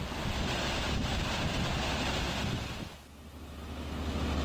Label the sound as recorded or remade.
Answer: recorded